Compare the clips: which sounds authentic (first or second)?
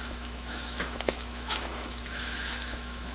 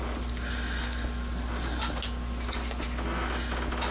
second